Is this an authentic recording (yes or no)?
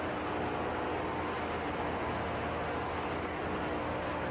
yes